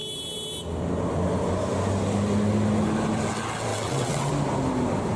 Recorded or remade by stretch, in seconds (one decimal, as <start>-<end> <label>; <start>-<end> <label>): 0.0-3.7 recorded; 3.7-4.3 remade; 4.3-5.2 recorded